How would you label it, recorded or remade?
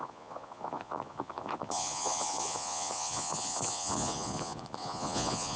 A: remade